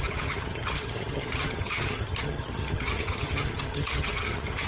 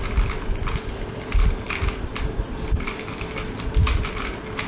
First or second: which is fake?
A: first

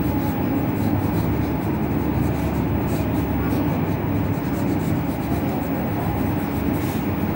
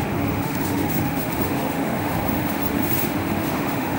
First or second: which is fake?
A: second